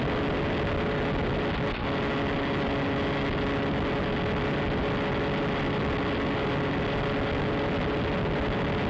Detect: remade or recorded recorded